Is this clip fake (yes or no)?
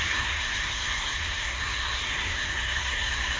yes